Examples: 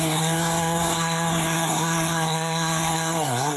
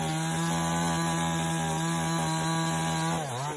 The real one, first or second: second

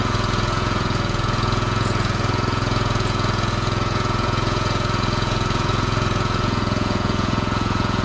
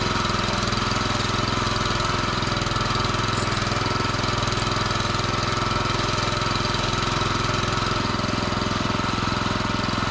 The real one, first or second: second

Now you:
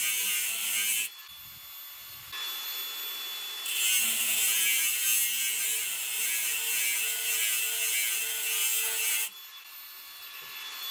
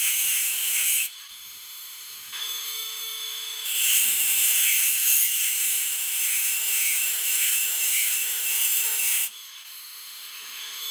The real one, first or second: first